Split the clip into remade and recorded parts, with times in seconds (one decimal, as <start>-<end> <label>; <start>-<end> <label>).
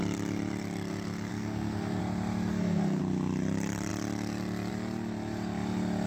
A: 0.0-1.3 recorded; 1.3-2.0 remade; 2.0-2.5 recorded; 2.5-3.0 remade; 3.0-6.1 recorded